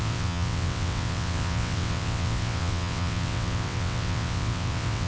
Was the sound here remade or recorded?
remade